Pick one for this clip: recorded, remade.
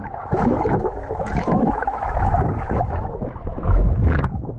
remade